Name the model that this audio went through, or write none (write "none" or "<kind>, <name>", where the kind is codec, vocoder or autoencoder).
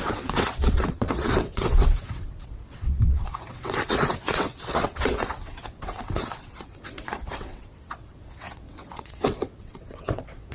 vocoder, WaveNeXt